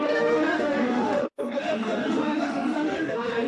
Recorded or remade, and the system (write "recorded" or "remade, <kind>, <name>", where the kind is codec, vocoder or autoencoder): remade, autoencoder, DAC-VAE